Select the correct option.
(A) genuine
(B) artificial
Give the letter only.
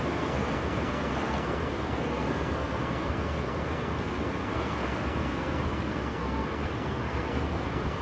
B